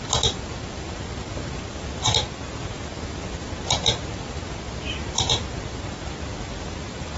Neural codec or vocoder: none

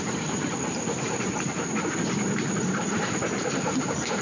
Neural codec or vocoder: vocoder, BigVGAN v2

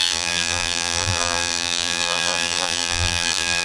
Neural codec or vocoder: vocoder, BigVGAN v2